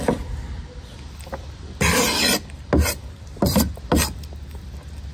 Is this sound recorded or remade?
recorded